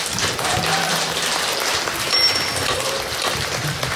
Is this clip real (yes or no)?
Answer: no